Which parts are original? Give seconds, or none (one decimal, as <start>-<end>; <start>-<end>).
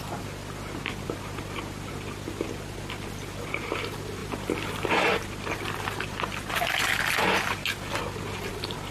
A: 0.0-8.9